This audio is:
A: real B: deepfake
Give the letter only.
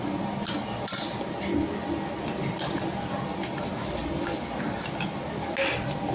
A